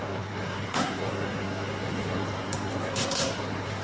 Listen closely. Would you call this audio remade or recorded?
remade